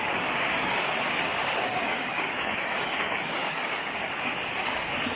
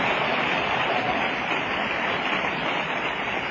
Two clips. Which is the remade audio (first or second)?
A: first